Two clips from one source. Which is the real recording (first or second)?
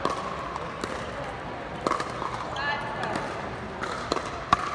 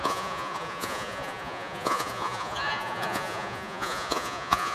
first